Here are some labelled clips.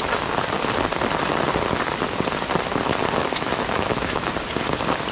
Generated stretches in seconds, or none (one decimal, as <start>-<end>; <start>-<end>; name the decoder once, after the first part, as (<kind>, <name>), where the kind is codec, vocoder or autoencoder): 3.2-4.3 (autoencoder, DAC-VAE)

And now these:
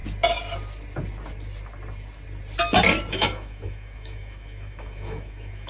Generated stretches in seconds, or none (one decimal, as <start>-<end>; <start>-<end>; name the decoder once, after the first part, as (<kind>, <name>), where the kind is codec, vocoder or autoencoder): 3.1-5.7 (autoencoder, DAC-VAE)

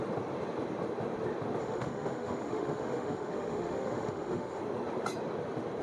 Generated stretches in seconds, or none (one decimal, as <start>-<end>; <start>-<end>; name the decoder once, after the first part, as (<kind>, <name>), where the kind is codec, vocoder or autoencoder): 1.6-4.6 (autoencoder, DAC-VAE)